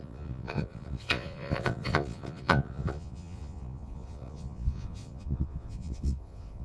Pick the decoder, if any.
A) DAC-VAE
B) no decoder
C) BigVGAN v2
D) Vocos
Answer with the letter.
D